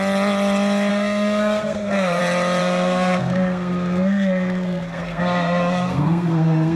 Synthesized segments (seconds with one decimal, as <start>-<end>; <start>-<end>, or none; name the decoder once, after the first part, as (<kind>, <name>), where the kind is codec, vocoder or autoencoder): 0.9-2.2 (codec, SNAC); 2.6-6.8